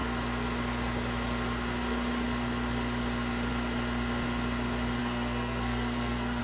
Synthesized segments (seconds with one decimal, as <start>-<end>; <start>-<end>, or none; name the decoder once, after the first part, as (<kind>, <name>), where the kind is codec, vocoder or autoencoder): 5.0-6.4 (codec, SNAC)